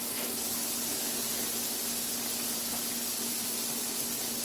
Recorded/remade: recorded